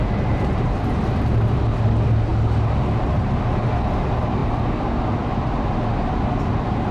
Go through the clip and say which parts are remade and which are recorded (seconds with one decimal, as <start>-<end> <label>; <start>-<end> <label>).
0.0-6.9 recorded